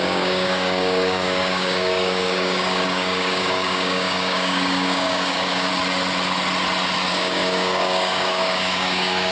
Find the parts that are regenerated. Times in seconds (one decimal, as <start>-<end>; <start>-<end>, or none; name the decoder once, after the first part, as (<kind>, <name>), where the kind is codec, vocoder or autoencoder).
0.0-5.7 (codec, DAC); 7.1-9.3